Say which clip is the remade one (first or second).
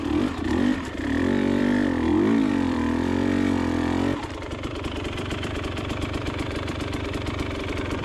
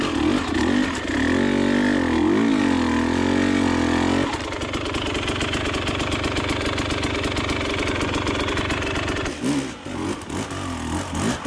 first